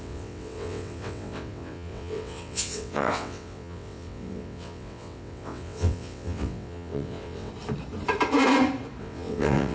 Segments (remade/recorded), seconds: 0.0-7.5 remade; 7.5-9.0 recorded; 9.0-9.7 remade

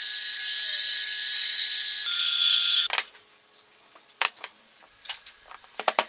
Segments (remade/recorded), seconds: 0.0-6.1 recorded

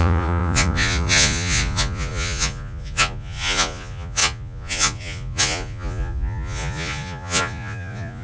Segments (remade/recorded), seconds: 0.0-8.2 remade

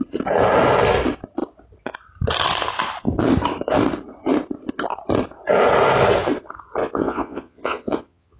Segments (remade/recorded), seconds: 0.0-6.8 recorded; 6.8-8.4 remade

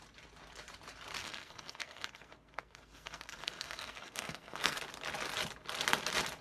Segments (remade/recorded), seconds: 0.0-1.2 recorded; 1.2-4.8 remade; 4.8-6.4 recorded

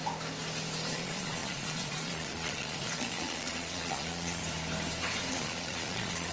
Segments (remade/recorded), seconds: 0.0-0.9 recorded; 0.9-4.4 remade; 4.4-5.3 recorded; 5.3-6.3 remade

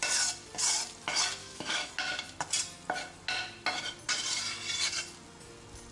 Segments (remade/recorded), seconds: 0.0-1.4 recorded; 1.4-1.9 remade; 1.9-5.9 recorded